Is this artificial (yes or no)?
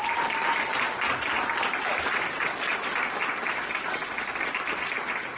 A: no